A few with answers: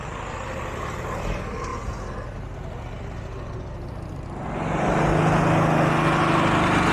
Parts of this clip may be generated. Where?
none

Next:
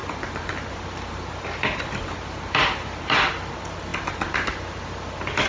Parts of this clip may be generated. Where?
0.0-3.3 (vocoder, BigVGAN v2)

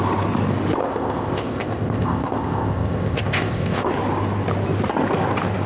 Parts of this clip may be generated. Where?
0.8-3.9 (codec, ZipCodec)

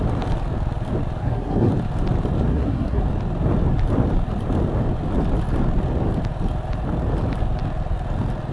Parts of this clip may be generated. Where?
1.2-1.7 (codec, SNAC); 2.5-3.0